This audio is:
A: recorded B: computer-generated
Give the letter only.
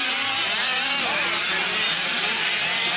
A